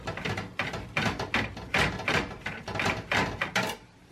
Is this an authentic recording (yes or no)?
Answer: yes